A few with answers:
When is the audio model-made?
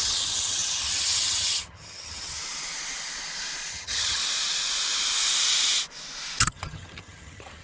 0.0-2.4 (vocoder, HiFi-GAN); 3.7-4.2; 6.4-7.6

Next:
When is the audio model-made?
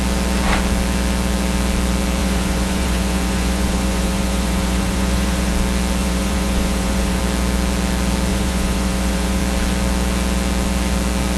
2.2-5.5 (vocoder, Vocos); 6.0-7.2; 8.3-9.4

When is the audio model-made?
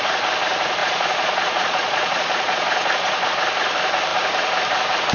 0.8-3.3 (vocoder, Vocos)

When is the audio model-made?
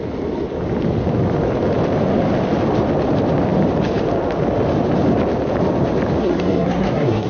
6.2-7.3 (codec, SNAC)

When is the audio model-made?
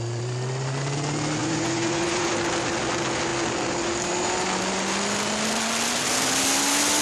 1.4-2.3 (vocoder, Vocos)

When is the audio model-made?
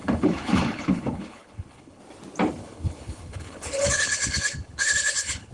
0.0-2.0 (codec, HILCodec); 2.6-5.5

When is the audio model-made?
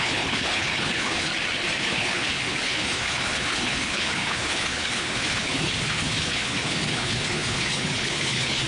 0.0-1.3 (codec, HILCodec); 1.8-8.7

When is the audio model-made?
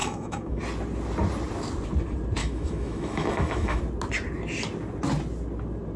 0.0-0.6 (autoencoder, DAC-VAE); 2.4-3.8